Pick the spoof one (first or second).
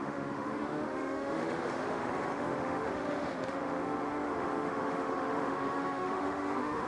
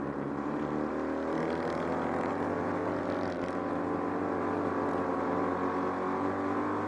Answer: first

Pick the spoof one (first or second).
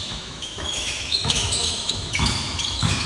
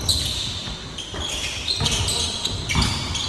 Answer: first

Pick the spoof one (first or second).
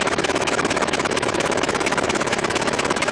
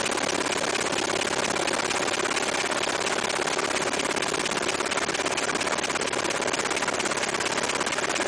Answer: first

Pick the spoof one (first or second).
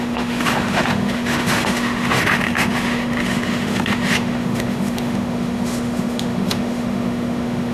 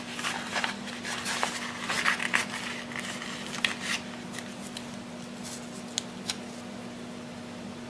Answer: first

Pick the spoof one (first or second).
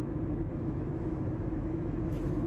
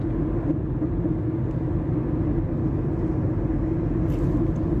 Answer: first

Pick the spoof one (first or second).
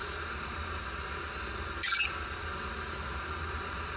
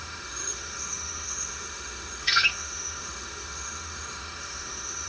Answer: second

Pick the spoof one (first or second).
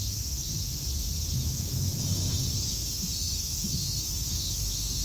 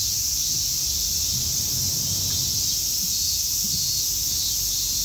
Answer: first